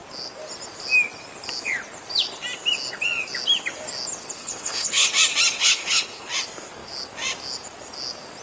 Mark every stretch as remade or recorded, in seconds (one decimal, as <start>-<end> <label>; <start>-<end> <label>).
0.0-4.4 recorded; 4.4-5.1 remade; 5.1-5.6 recorded; 5.6-6.3 remade; 6.3-8.4 recorded